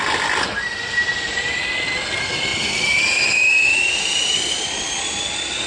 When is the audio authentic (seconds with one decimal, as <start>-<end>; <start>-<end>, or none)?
0.0-5.7